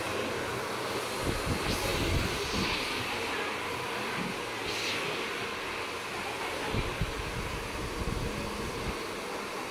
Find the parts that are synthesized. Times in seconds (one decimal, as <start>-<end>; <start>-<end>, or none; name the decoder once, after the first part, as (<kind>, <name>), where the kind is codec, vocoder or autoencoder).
none